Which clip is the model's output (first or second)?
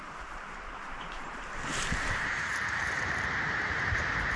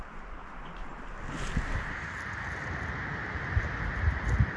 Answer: first